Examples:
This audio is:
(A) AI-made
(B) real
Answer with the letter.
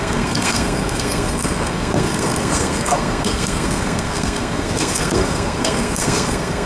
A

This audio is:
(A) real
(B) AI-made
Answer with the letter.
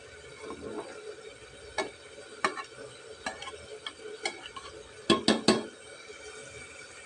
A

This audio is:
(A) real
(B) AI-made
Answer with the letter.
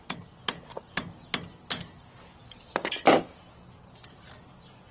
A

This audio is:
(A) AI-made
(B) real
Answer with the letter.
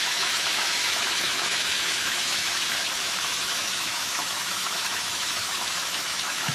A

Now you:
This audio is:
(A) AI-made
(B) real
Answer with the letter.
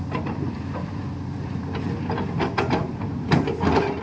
A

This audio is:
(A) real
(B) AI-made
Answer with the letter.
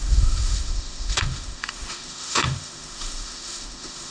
B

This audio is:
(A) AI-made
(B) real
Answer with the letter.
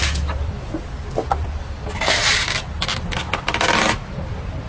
B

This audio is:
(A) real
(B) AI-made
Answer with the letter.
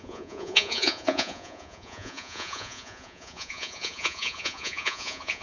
B